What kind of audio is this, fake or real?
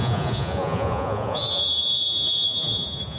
fake